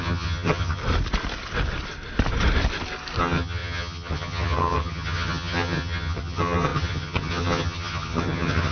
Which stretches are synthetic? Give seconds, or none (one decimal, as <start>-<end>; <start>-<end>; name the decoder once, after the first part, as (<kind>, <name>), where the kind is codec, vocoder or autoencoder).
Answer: 0.0-0.8 (vocoder, HiFi-GAN); 3.2-8.7